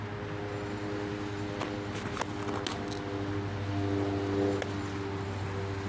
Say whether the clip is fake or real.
real